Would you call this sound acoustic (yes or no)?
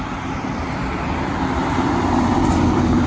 no